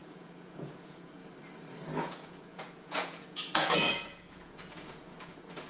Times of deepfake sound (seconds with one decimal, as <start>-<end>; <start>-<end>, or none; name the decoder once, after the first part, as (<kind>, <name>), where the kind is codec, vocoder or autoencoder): 0.0-1.2 (vocoder, Vocos); 2.0-5.7